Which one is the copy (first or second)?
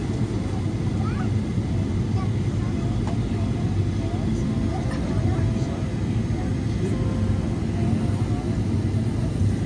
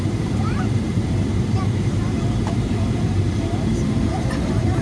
second